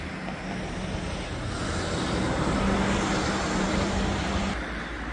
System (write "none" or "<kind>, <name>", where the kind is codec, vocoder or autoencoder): none